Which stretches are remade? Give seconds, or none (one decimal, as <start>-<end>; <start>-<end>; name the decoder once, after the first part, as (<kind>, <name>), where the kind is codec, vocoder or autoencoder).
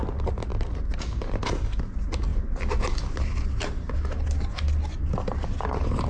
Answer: none